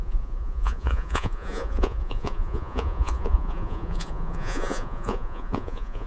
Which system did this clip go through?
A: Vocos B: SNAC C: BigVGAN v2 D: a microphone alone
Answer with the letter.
A